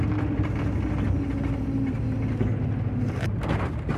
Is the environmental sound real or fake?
real